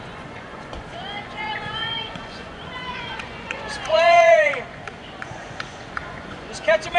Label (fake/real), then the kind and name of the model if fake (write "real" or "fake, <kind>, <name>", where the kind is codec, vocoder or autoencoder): fake, vocoder, Vocos